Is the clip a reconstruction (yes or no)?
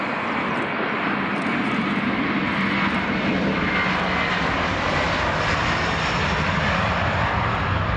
no